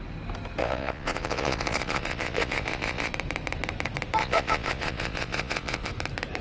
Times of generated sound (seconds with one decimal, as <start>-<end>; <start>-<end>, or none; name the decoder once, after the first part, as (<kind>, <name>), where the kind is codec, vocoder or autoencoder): 0.6-3.1 (vocoder, Vocos); 4.2-5.9